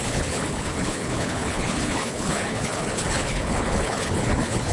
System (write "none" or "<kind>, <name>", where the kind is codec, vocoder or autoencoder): codec, HILCodec